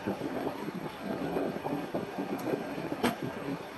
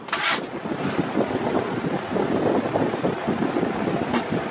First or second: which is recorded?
second